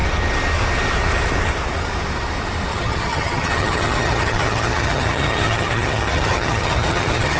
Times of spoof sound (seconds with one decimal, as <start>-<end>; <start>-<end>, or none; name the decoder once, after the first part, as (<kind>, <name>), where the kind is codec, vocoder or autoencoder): 2.7-7.4 (vocoder, HiFi-GAN)